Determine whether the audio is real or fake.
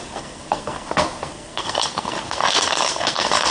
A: fake